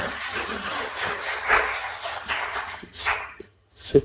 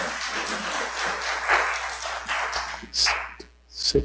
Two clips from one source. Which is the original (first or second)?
second